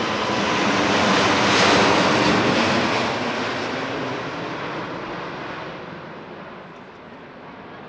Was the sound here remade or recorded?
recorded